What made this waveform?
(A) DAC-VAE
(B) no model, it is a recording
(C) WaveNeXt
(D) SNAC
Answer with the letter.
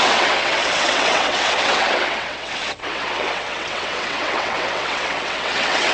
C